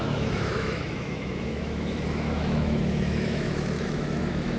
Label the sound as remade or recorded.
remade